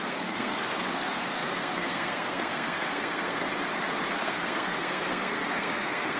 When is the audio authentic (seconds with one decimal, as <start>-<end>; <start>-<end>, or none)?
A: 3.5-4.1